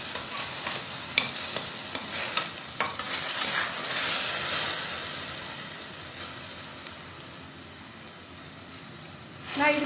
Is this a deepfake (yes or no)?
no